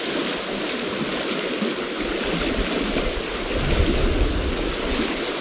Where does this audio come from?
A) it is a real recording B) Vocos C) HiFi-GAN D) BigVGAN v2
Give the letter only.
A